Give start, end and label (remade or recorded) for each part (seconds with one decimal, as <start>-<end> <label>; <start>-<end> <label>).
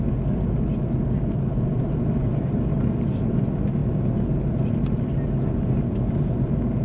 0.0-6.8 recorded